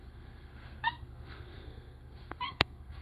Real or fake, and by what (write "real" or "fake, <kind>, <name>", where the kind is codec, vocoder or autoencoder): fake, codec, SNAC